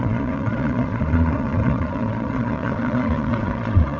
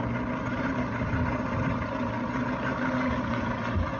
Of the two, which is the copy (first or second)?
first